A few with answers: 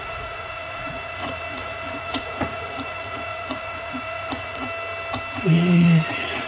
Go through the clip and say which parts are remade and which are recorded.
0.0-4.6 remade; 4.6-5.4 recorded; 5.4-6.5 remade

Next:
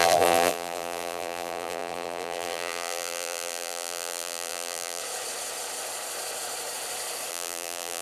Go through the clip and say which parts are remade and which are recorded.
0.0-5.0 remade; 5.0-7.3 recorded; 7.3-8.0 remade

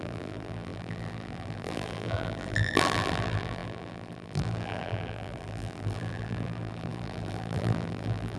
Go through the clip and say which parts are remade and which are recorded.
0.0-8.4 remade

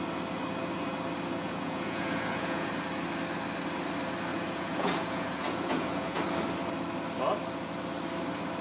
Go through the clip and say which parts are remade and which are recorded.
0.0-1.4 recorded; 1.4-2.7 remade; 2.7-4.3 recorded; 4.3-6.2 remade; 6.2-8.6 recorded